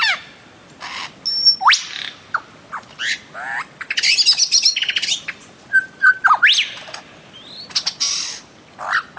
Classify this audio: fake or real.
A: real